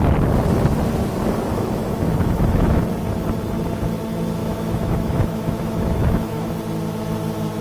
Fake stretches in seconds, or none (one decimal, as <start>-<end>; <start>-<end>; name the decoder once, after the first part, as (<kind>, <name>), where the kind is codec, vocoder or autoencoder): 1.5-2.8 (autoencoder, DAC-VAE); 4.4-6.5